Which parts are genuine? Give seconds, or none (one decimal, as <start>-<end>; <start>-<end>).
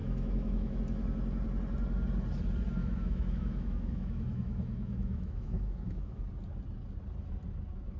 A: 0.8-2.8; 6.2-8.0